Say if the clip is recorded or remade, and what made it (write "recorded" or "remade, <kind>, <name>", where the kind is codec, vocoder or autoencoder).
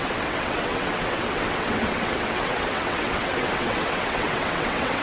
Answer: remade, vocoder, WaveNeXt